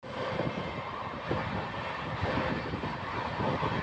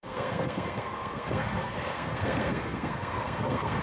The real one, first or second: first